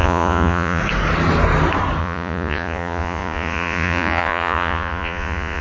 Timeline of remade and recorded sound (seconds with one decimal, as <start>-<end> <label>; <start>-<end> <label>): 0.0-0.8 remade; 0.8-2.0 recorded; 2.0-5.6 remade